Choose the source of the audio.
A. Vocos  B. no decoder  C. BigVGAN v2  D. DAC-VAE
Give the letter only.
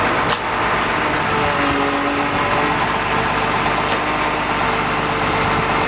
B